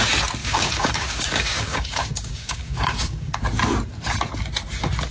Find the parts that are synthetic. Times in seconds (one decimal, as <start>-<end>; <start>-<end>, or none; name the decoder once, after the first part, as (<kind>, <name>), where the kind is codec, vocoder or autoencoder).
0.4-3.4 (codec, DAC)